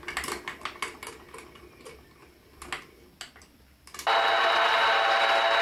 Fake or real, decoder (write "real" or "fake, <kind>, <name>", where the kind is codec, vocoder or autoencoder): real